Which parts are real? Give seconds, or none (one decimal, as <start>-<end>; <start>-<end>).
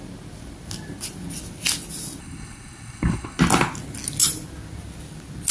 0.0-2.2; 3.4-5.5